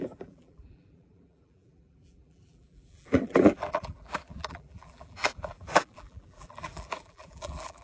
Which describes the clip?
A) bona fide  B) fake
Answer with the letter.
B